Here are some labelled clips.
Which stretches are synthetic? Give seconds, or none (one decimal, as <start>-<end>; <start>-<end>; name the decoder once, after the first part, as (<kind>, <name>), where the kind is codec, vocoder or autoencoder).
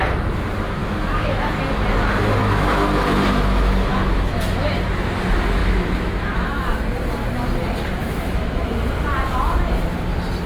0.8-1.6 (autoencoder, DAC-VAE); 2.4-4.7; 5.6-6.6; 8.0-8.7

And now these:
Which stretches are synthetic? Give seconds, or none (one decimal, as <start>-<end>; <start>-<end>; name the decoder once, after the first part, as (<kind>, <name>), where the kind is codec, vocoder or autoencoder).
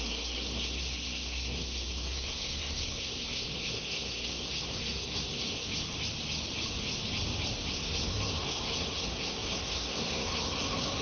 0.0-5.7 (codec, SNAC); 7.7-11.0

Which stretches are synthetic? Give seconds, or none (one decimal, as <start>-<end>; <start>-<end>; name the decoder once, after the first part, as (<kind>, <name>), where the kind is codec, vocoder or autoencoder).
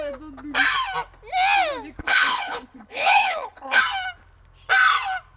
2.0-3.8 (codec, HILCodec)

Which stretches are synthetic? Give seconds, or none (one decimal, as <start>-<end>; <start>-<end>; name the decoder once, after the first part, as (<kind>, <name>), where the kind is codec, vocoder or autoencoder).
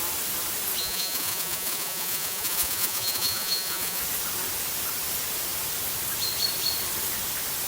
0.8-4.0 (vocoder, Vocos)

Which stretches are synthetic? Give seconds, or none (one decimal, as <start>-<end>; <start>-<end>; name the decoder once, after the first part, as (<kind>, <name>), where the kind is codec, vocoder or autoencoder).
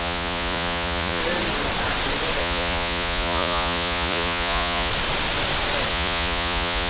0.0-1.2 (vocoder, Vocos); 2.4-4.9; 5.9-6.9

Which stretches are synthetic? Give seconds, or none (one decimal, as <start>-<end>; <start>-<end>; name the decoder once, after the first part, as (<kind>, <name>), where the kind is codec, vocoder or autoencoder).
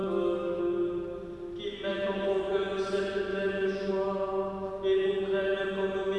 0.0-0.6 (autoencoder, DAC-VAE); 1.9-2.5; 3.3-3.9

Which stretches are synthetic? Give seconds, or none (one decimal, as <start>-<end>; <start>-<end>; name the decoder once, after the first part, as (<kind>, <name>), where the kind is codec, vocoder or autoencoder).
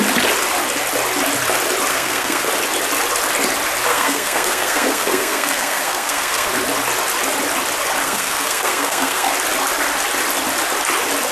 1.9-2.5 (codec, SNAC); 3.9-6.5; 8.0-9.3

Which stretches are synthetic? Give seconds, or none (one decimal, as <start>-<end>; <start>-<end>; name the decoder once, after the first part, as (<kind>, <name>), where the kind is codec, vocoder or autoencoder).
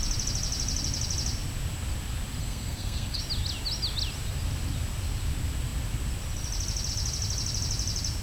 2.4-3.2 (codec, SNAC)